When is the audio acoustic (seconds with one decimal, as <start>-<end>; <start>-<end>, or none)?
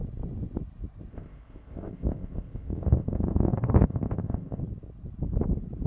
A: 0.0-1.1; 4.6-5.9